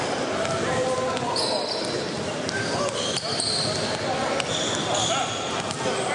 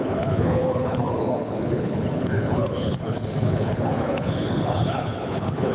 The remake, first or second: second